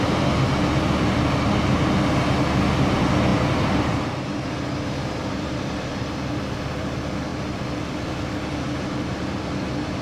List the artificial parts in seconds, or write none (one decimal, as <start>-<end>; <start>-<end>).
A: none